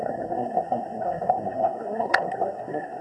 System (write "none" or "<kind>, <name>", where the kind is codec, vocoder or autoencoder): codec, SNAC